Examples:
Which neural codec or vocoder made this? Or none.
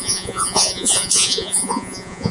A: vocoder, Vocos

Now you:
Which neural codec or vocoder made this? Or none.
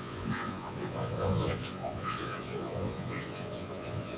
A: vocoder, Vocos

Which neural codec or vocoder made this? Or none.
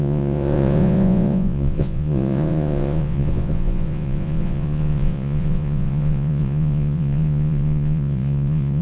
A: vocoder, Vocos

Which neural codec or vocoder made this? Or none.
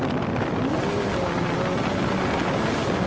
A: none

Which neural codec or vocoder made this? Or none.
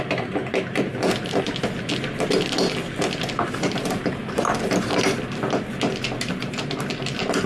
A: none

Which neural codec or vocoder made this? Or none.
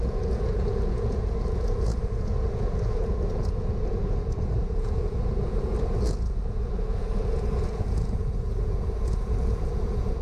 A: vocoder, Vocos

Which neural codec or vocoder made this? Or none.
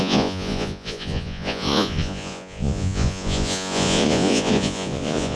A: vocoder, Vocos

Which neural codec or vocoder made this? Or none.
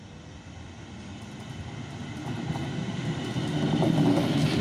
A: none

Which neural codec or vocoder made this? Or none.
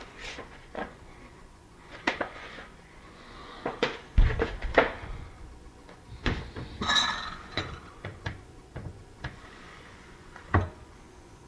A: vocoder, Vocos